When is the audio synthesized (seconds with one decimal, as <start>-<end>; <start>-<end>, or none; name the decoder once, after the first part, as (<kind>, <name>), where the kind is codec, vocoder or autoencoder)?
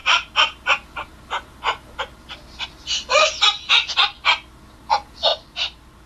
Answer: 0.0-2.0 (vocoder, BigVGAN v2); 5.3-6.1